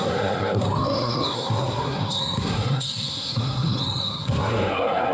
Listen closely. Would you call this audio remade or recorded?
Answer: remade